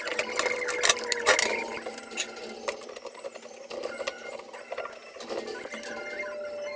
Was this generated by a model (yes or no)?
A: no